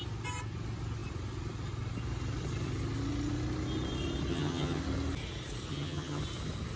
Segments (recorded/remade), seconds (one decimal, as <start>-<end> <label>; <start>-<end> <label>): 0.0-4.3 recorded; 4.3-4.8 remade; 4.8-5.7 recorded; 5.7-6.2 remade; 6.2-6.8 recorded